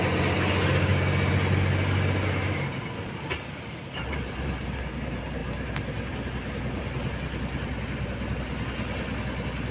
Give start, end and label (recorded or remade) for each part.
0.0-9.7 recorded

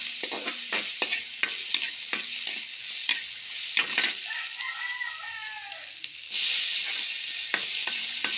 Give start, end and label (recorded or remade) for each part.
0.0-8.4 recorded

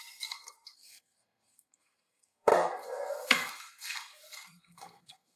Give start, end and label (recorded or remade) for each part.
0.0-5.4 remade

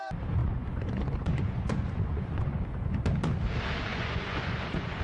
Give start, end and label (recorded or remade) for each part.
0.0-0.4 recorded; 0.4-2.6 remade; 2.6-3.9 recorded; 3.9-5.0 remade